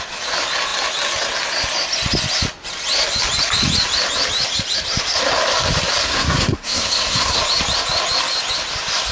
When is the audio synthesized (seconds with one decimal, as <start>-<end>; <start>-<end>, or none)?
6.0-7.4